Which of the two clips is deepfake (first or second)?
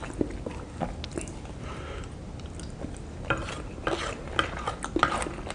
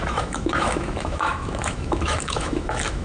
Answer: second